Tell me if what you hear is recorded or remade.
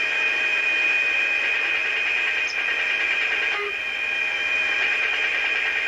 remade